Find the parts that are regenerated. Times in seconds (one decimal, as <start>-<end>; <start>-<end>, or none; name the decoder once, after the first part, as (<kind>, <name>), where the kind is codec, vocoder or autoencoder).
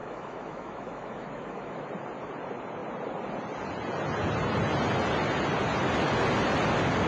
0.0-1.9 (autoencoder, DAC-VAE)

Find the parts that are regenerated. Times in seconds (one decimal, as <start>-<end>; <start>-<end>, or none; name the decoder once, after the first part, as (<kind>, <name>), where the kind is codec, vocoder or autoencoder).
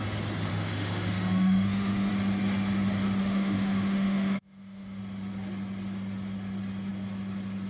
0.5-2.1 (autoencoder, DAC-VAE); 3.2-5.0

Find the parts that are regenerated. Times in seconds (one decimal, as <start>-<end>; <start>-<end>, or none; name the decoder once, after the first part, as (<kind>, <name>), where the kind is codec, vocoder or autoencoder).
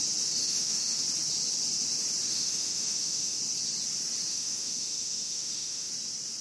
0.4-1.0 (autoencoder, DAC-VAE); 2.3-3.4; 4.3-5.9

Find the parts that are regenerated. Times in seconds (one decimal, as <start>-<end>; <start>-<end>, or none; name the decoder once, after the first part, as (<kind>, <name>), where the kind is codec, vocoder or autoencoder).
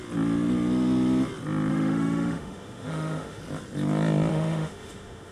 1.7-3.4 (autoencoder, DAC-VAE); 4.3-5.3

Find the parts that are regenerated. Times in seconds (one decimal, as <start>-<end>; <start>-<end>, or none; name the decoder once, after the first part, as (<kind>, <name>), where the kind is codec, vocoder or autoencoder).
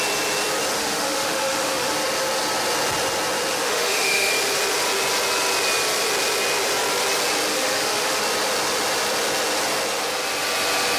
0.8-1.9 (autoencoder, DAC-VAE); 3.5-4.3; 7.5-8.2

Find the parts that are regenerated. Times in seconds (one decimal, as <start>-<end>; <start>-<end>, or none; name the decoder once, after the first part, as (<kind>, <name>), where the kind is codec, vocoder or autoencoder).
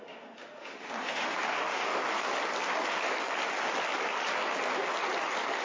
0.0-1.9 (autoencoder, DAC-VAE)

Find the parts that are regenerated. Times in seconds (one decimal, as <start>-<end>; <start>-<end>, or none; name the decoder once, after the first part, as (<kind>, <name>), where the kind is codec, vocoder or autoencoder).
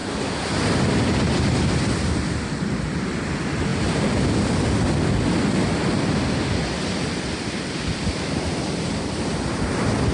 none